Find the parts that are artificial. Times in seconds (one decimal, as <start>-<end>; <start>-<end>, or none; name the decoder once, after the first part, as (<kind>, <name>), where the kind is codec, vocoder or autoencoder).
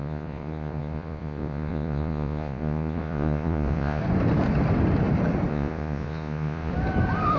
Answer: 0.0-4.0 (vocoder, Vocos); 5.5-6.7